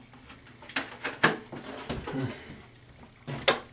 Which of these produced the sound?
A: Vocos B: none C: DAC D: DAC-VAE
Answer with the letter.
B